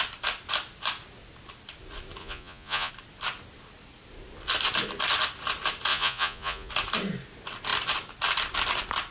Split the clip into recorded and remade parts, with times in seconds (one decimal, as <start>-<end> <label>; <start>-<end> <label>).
0.0-2.2 recorded; 2.2-2.9 remade; 2.9-5.9 recorded; 5.9-6.7 remade; 6.7-9.1 recorded